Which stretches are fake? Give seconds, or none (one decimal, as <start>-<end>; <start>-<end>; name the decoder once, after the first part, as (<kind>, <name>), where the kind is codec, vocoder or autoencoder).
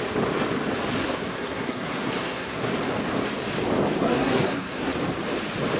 1.0-2.7 (codec, SNAC); 4.0-4.9